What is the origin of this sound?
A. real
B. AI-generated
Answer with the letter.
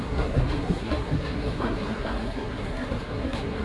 B